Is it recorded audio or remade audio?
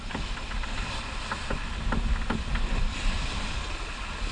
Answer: recorded